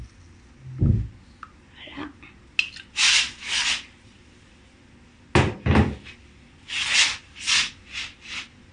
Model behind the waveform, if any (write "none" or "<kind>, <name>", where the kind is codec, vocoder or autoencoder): none